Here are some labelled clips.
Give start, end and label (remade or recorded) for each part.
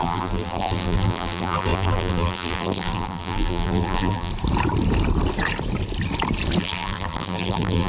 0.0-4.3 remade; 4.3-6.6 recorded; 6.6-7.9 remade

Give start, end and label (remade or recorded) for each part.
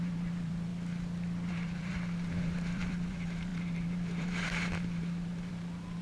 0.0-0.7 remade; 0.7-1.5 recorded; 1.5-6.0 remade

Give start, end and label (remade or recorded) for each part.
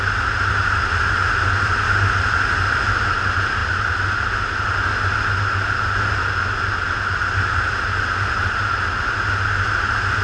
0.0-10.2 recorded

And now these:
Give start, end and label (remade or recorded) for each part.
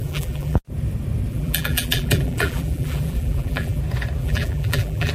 0.0-0.6 remade; 0.6-1.3 recorded; 1.3-3.8 remade; 3.8-4.2 recorded; 4.2-5.1 remade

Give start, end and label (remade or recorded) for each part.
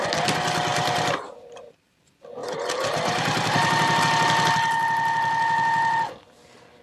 0.0-0.7 recorded; 0.7-2.0 remade; 2.0-2.4 recorded; 2.4-4.0 remade; 4.0-6.8 recorded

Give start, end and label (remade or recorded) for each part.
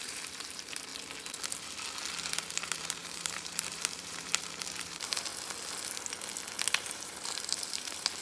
0.0-0.9 remade; 0.9-2.5 recorded; 2.5-5.3 remade; 5.3-6.8 recorded; 6.8-8.2 remade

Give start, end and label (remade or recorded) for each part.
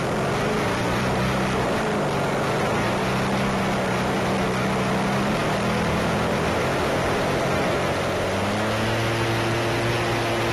0.0-5.9 recorded; 5.9-6.5 remade; 6.5-10.5 recorded